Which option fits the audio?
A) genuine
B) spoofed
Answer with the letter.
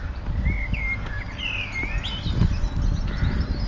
A